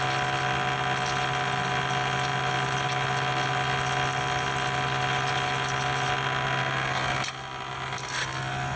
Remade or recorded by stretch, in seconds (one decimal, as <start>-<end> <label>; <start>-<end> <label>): 0.0-8.8 recorded